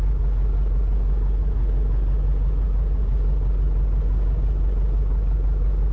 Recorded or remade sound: recorded